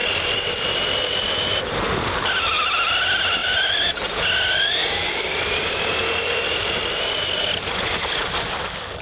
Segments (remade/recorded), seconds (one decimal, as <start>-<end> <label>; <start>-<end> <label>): 0.0-9.0 recorded